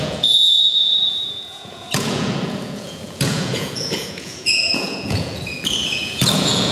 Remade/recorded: remade